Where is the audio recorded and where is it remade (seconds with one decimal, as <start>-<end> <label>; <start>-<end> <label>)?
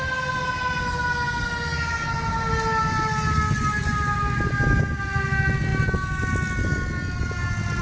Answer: 0.0-7.8 recorded